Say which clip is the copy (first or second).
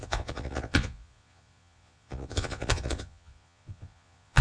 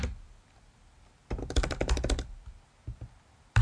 first